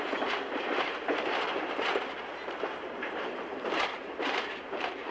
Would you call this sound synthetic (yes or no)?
yes